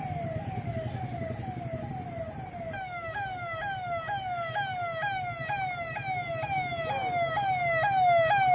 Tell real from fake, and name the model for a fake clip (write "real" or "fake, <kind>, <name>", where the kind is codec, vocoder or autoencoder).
real